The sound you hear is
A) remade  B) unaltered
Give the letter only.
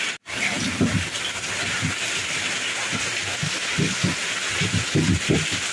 B